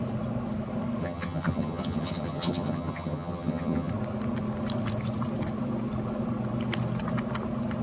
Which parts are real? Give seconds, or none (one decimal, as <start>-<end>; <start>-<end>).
0.0-1.0; 3.9-7.8